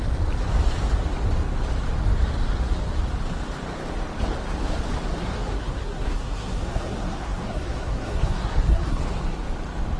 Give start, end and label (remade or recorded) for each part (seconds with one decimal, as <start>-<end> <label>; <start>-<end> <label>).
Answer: 0.0-5.2 recorded; 5.2-9.0 remade; 9.0-10.0 recorded